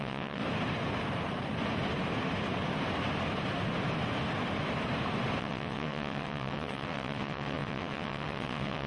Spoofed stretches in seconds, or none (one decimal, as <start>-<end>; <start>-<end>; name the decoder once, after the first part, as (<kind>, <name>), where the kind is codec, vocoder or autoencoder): 0.0-0.4 (vocoder, WaveNeXt); 5.4-8.9